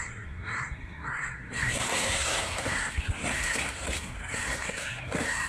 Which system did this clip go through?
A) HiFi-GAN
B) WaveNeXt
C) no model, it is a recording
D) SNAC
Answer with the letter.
D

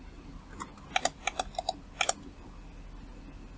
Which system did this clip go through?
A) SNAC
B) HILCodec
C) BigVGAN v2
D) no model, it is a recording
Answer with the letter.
D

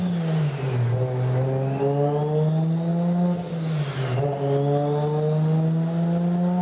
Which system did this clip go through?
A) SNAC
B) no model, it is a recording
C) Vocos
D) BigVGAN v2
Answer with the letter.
B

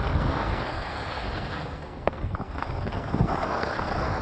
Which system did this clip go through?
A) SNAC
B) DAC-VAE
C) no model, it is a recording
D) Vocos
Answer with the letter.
A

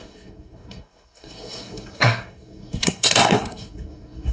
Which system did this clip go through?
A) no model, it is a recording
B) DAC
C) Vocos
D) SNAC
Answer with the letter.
D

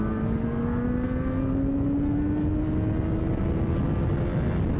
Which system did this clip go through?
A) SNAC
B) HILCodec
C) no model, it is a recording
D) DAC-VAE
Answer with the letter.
C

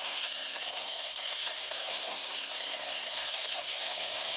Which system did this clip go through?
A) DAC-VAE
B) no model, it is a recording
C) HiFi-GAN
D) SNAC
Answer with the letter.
D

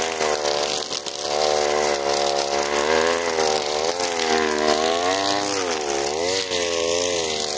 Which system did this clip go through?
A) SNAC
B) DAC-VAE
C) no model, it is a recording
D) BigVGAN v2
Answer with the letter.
C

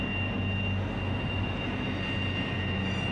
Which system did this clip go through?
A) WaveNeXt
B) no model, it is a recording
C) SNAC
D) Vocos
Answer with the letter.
B